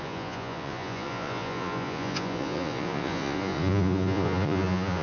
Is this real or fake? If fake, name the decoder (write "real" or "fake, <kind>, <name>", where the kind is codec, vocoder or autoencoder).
fake, vocoder, Vocos